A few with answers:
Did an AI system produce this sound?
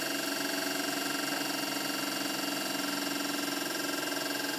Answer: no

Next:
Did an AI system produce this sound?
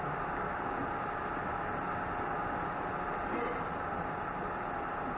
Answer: no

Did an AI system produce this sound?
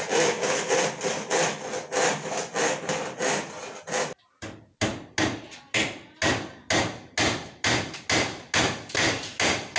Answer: no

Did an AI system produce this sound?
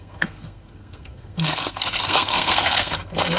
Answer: yes